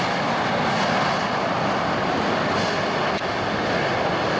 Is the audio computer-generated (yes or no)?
no